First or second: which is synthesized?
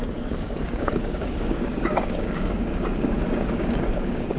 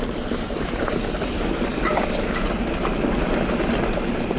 first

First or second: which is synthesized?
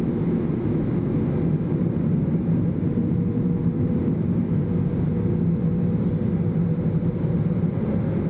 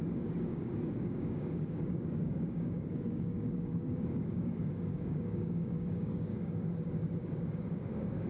second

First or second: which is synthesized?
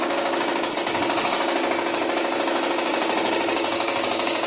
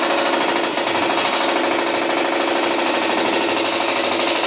first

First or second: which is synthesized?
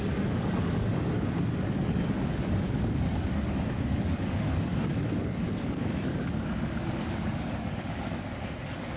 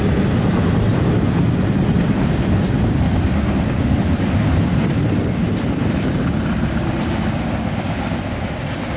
first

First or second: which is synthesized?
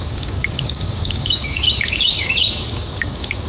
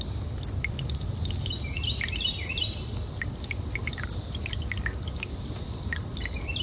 first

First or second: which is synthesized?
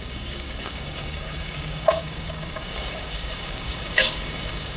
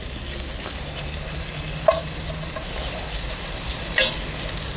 first